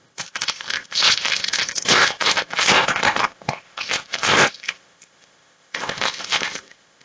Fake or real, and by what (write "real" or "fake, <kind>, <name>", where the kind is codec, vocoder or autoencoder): fake, codec, ZipCodec